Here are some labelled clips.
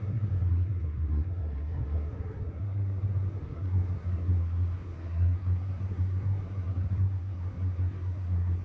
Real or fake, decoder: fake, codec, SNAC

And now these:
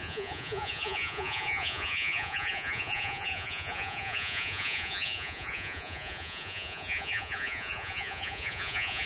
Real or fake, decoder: fake, vocoder, Vocos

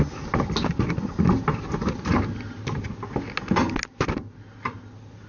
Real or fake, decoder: real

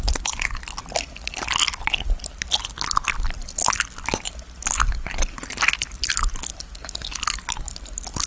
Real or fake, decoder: real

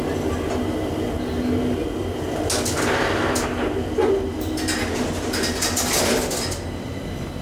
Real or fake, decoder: real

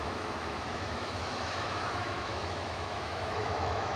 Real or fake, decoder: fake, autoencoder, DAC-VAE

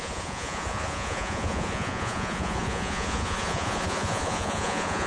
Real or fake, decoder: fake, vocoder, Vocos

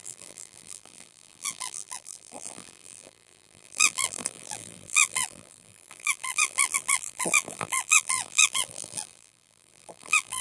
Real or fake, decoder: fake, vocoder, BigVGAN v2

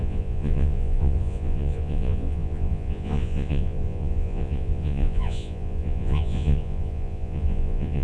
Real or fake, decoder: fake, vocoder, Vocos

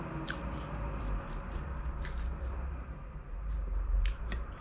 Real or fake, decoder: fake, vocoder, BigVGAN v2